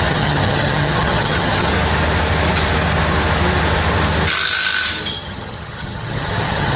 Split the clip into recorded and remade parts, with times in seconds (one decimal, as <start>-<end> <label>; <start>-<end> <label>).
0.0-1.7 remade; 1.7-5.1 recorded; 5.1-6.8 remade

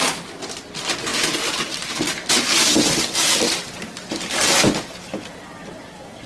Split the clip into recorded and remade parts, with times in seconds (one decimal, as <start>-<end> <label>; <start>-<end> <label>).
0.0-6.3 recorded

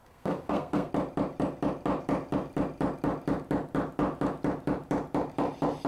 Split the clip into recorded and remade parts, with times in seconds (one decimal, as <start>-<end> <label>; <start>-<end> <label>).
0.0-0.9 remade; 0.9-5.9 recorded

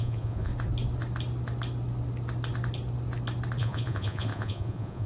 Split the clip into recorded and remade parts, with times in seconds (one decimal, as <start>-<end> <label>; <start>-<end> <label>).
0.0-0.5 remade; 0.5-3.6 recorded; 3.6-5.1 remade

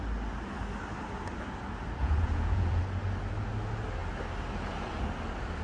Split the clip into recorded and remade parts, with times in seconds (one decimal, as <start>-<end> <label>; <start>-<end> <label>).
0.0-2.0 recorded; 2.0-2.8 remade; 2.8-5.6 recorded

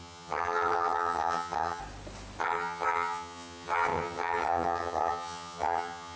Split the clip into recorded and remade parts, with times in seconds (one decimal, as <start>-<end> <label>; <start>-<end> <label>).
0.0-1.8 remade; 1.8-2.4 recorded; 2.4-6.2 remade

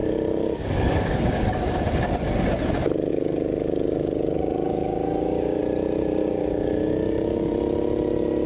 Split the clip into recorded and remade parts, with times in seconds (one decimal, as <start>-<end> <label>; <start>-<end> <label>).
0.0-1.8 remade; 1.8-3.1 recorded; 3.1-5.6 remade; 5.6-6.2 recorded; 6.2-7.5 remade; 7.5-8.5 recorded

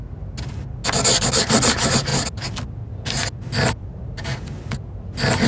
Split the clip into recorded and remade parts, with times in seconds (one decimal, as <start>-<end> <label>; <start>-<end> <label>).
0.0-5.5 recorded